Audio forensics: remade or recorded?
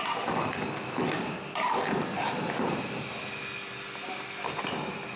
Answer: recorded